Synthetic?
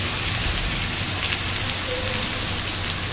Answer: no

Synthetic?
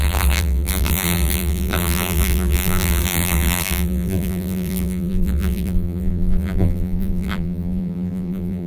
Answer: yes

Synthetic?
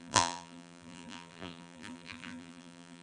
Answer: yes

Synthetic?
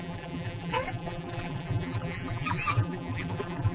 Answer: yes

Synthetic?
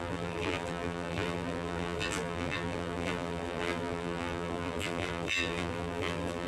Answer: yes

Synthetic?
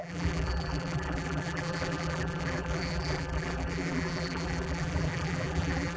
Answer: yes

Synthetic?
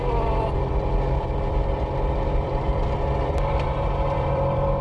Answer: yes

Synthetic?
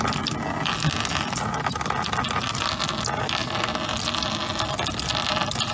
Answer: no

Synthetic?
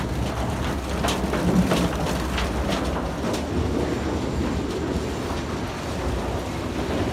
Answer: no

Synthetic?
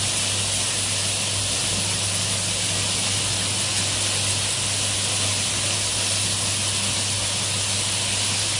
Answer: no